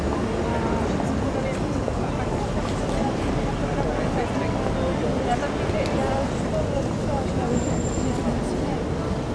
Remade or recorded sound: recorded